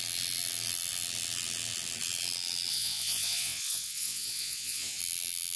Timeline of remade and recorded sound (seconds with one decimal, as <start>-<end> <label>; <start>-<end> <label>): 0.0-2.7 recorded; 2.7-5.0 remade; 5.0-5.6 recorded